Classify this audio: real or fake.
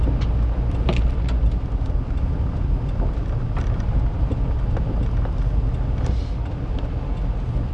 real